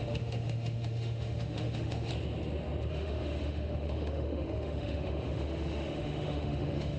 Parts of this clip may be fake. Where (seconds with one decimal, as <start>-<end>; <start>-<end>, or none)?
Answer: 0.0-2.1; 2.9-7.0